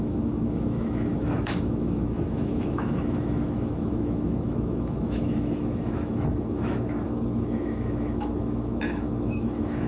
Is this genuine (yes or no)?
no